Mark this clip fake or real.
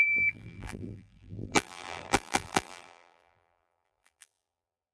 fake